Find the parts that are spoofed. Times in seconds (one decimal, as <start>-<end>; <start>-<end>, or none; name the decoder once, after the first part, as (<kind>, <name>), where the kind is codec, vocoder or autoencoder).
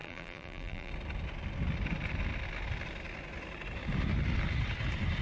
0.0-0.9 (vocoder, BigVGAN v2)